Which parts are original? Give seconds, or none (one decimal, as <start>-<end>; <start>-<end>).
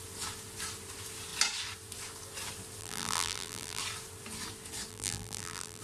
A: 0.0-2.8; 3.8-4.9